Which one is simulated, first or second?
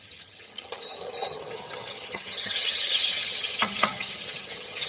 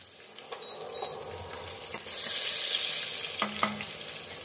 first